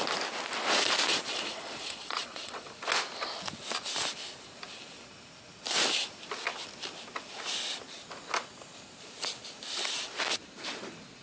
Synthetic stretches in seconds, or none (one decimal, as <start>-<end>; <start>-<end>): 1.3-2.7